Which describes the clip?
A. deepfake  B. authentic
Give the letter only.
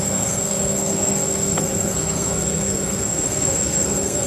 A